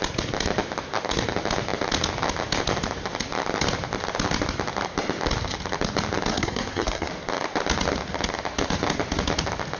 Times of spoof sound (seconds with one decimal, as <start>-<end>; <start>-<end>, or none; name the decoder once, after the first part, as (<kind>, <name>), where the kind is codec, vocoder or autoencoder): 6.3-7.1 (codec, SNAC)